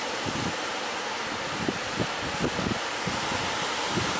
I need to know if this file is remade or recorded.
recorded